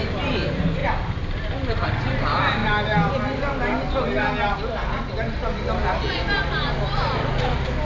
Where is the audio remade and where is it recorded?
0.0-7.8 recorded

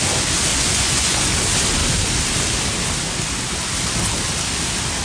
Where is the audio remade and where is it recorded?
0.0-0.5 recorded; 0.5-1.2 remade; 1.2-5.0 recorded

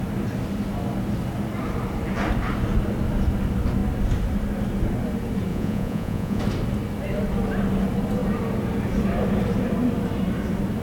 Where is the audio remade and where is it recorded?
0.0-5.5 recorded; 5.5-6.4 remade; 6.4-10.8 recorded

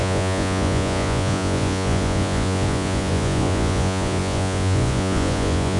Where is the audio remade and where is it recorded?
0.0-5.8 remade

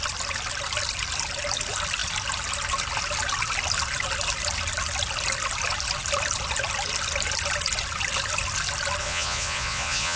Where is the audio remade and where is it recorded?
0.0-9.0 recorded; 9.0-10.2 remade